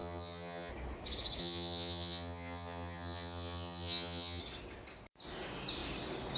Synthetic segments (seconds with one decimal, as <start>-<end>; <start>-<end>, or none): 0.0-0.7; 1.4-4.4

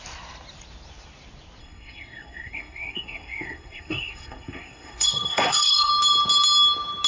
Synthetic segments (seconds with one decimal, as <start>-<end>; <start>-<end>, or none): 1.6-5.9